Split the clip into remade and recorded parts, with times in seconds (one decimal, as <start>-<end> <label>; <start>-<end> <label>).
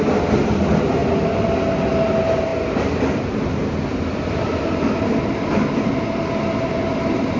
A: 0.0-7.4 recorded